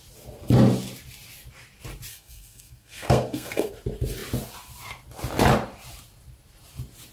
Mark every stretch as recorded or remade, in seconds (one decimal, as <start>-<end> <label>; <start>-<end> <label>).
0.0-2.1 recorded; 2.1-3.7 remade; 3.7-7.1 recorded